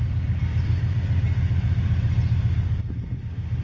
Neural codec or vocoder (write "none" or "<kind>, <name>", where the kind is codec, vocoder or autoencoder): none